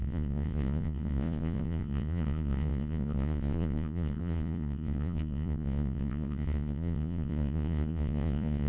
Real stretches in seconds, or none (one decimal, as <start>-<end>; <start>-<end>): none